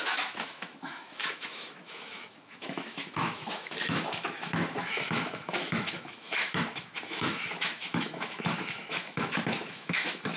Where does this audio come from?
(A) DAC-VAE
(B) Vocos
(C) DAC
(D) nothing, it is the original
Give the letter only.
A